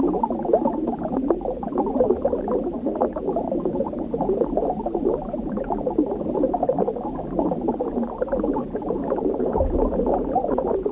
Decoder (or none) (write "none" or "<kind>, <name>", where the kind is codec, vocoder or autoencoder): vocoder, BigVGAN v2